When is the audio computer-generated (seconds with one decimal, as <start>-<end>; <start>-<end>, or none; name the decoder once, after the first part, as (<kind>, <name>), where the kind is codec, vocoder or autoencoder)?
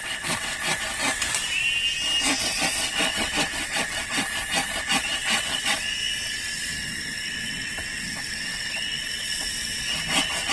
0.0-0.6 (vocoder, WaveNeXt); 2.4-4.2; 4.8-10.5